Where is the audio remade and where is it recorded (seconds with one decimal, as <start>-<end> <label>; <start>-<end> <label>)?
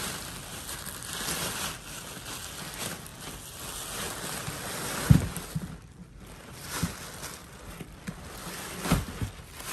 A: 0.0-7.4 recorded; 7.4-9.1 remade; 9.1-9.7 recorded